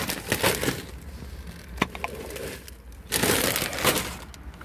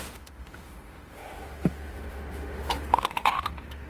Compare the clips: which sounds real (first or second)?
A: first